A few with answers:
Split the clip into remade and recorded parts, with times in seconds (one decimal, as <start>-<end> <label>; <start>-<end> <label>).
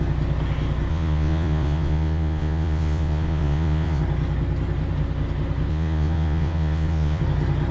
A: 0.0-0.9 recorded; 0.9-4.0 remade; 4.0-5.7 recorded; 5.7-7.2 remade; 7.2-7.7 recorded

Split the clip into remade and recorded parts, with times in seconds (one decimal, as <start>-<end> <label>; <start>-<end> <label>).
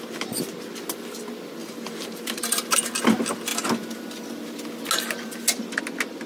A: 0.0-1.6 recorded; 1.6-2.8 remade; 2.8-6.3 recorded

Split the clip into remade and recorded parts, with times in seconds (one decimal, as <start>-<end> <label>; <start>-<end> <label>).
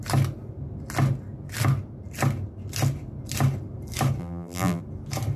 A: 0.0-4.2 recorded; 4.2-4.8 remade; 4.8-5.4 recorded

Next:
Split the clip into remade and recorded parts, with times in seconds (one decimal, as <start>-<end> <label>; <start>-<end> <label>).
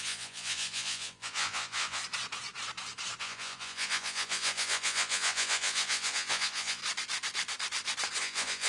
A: 0.0-2.0 remade; 2.0-3.2 recorded; 3.2-6.8 remade; 6.8-8.2 recorded; 8.2-8.7 remade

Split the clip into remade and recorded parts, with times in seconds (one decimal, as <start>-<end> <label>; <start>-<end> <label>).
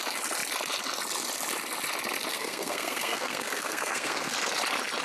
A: 0.0-2.3 recorded; 2.3-4.3 remade; 4.3-5.0 recorded